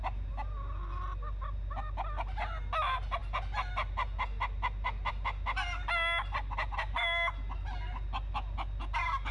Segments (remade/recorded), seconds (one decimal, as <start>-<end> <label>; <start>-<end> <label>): 0.0-9.3 recorded